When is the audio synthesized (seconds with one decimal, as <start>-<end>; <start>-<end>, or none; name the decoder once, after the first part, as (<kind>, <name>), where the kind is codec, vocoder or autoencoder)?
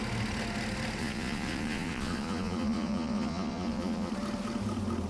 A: 1.0-4.1 (vocoder, Vocos)